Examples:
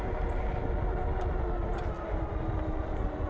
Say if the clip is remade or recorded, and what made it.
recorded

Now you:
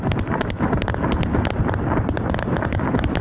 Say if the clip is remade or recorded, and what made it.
recorded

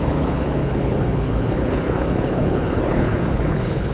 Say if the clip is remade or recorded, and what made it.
remade, codec, HILCodec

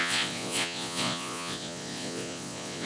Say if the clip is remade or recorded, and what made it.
remade, vocoder, Vocos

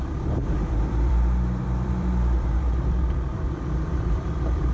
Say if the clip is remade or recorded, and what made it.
remade, vocoder, BigVGAN v2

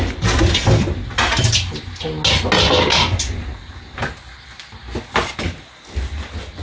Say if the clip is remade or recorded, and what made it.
recorded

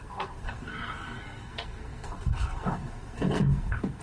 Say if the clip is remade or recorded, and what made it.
remade, codec, SNAC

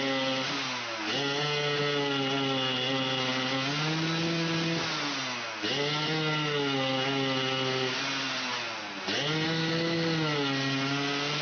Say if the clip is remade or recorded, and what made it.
recorded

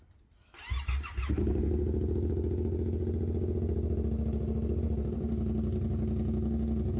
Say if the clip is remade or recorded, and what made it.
recorded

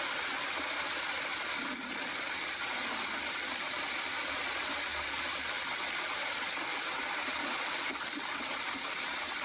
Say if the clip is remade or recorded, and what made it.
remade, vocoder, BigVGAN v2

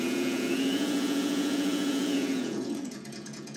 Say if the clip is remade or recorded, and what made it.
remade, vocoder, Vocos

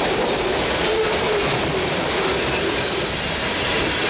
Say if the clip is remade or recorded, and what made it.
recorded